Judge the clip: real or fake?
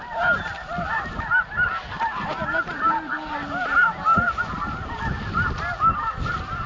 real